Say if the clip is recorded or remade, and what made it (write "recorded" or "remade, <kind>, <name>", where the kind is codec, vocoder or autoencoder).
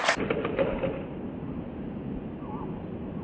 recorded